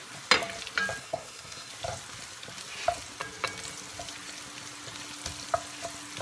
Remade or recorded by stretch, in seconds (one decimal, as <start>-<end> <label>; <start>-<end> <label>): 0.0-1.0 recorded; 1.0-1.7 remade; 1.7-6.2 recorded